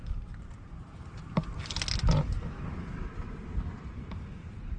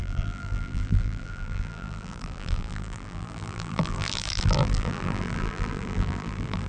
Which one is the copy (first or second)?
second